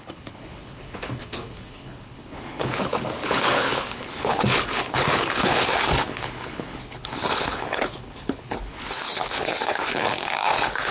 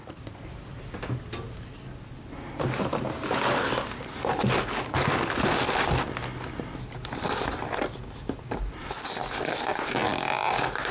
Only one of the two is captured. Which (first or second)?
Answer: second